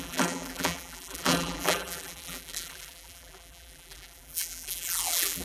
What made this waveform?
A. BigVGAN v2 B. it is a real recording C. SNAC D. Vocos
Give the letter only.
A